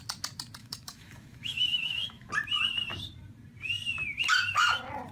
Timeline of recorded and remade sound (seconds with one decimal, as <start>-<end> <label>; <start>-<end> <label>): 0.0-0.6 recorded; 0.6-2.3 remade; 2.3-5.1 recorded